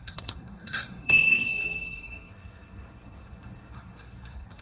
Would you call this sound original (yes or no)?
no